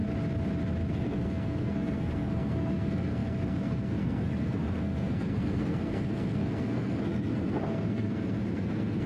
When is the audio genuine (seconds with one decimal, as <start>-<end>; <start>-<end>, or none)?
0.0-0.9